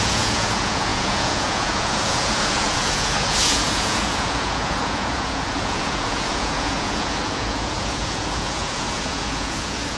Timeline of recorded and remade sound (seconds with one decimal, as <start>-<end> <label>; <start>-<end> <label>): 0.0-10.0 remade